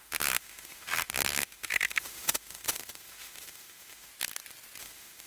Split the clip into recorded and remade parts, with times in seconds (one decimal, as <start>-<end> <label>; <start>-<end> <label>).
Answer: 0.0-4.1 remade; 4.1-4.8 recorded; 4.8-5.3 remade